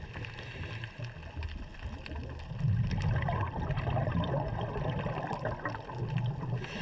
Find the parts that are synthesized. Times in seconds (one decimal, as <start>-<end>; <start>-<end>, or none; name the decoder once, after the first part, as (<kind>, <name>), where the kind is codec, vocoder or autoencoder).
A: none